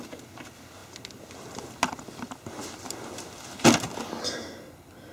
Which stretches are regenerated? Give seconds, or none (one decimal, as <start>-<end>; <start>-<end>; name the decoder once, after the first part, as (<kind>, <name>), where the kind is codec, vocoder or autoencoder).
none